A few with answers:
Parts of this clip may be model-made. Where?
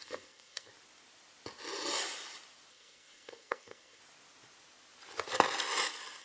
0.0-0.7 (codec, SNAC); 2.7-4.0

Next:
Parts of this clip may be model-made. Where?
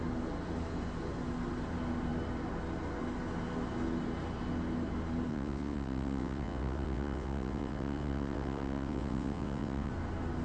5.3-9.9 (vocoder, WaveNeXt)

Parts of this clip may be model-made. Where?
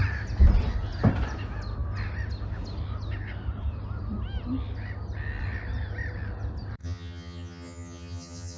6.8-8.6 (vocoder, HiFi-GAN)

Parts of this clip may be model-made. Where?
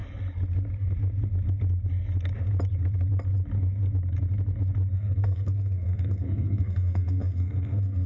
4.9-8.1 (codec, SNAC)